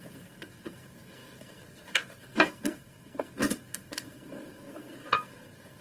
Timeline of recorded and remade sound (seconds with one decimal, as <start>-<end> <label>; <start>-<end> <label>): 0.0-5.8 remade